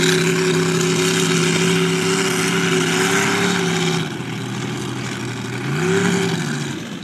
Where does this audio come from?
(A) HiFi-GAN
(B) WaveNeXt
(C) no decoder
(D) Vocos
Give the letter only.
C